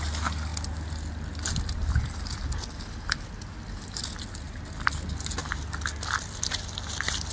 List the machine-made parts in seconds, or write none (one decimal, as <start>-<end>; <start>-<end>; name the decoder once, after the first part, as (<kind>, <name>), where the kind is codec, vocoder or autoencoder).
none